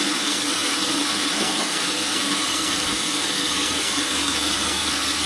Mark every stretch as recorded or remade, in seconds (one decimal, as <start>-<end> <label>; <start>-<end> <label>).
0.0-5.3 remade